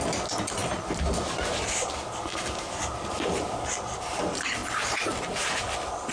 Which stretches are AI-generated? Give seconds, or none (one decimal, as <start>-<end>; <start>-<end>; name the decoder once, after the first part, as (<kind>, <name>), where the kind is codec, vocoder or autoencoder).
none